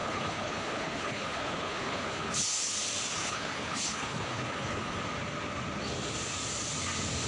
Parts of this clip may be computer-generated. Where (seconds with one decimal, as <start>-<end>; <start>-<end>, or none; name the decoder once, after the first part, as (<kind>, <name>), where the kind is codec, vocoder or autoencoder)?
0.0-2.7 (codec, HILCodec); 3.2-5.0

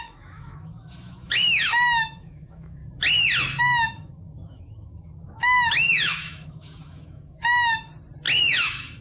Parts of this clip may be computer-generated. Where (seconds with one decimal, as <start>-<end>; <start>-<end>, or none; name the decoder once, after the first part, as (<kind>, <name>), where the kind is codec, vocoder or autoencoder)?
0.0-2.8 (autoencoder, DAC-VAE); 3.6-7.9; 8.5-9.0